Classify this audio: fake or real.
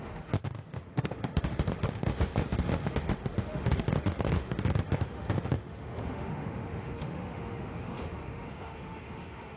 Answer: fake